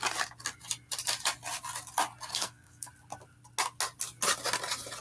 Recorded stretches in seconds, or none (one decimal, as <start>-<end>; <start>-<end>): 0.0-2.3; 2.9-5.0